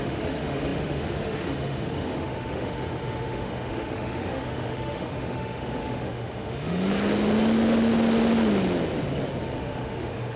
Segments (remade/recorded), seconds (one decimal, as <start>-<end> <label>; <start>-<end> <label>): 0.0-6.9 remade; 6.9-9.6 recorded; 9.6-10.4 remade